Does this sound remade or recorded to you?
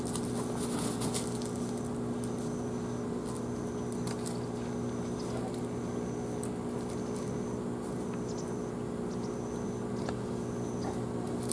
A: recorded